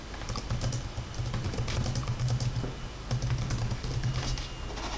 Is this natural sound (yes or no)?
yes